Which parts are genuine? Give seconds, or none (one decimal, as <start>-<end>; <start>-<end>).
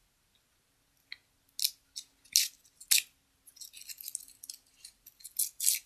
0.0-5.9